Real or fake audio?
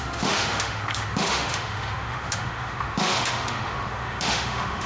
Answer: fake